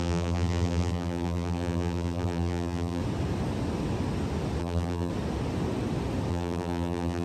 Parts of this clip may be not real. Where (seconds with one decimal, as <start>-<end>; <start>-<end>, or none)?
0.0-3.0; 4.6-5.1; 6.3-7.2